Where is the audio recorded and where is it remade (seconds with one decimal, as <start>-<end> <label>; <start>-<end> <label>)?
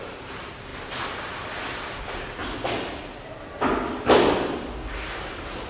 0.0-5.7 recorded